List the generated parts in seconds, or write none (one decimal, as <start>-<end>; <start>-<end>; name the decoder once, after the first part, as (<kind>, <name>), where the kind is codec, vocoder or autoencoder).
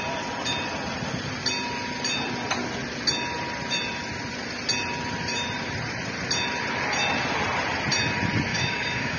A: 8.5-9.2 (codec, DAC)